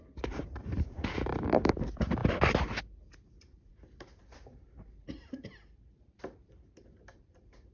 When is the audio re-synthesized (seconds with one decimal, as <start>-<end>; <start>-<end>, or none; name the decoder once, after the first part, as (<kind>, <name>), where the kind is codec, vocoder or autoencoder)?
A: 0.0-2.2 (vocoder, BigVGAN v2); 2.8-7.7